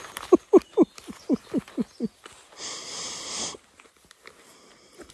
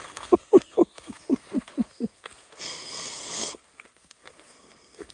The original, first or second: first